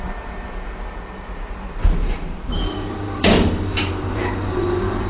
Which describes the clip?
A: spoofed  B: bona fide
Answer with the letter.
A